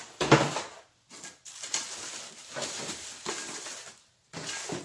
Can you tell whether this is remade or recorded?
recorded